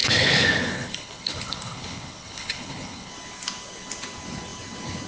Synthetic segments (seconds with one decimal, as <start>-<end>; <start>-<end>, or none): 0.0-3.1